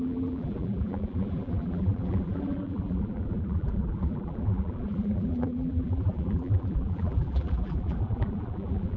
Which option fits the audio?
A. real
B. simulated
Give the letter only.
B